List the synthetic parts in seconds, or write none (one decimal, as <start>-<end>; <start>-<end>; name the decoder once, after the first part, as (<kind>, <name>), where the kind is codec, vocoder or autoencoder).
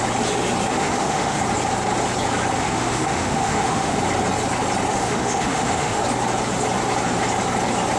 0.7-1.4 (autoencoder, DAC-VAE); 2.6-4.0; 4.9-6.0